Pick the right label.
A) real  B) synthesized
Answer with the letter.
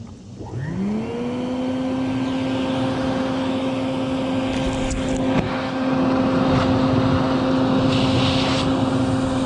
A